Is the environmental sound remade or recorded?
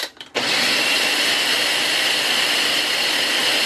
recorded